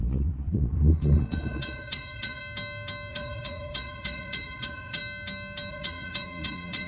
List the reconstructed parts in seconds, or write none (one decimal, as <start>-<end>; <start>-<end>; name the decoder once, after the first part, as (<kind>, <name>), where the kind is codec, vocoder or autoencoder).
0.0-2.4 (vocoder, Vocos); 3.1-5.0; 5.7-6.9